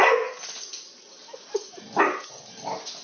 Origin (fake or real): real